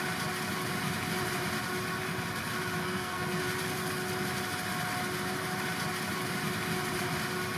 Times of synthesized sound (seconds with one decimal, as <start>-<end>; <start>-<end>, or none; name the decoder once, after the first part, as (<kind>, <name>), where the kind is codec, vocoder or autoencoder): 2.8-3.4 (codec, SNAC)

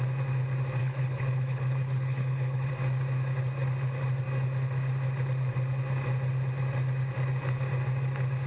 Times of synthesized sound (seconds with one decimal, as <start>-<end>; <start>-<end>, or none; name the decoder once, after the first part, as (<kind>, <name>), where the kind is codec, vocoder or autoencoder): 0.8-2.7 (codec, HILCodec)